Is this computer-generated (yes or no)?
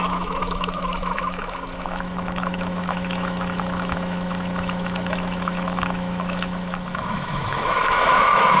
yes